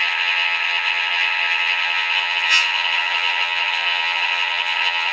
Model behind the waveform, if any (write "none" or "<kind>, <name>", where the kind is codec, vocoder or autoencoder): vocoder, HiFi-GAN